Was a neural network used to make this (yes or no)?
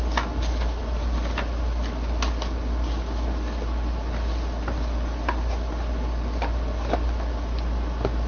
no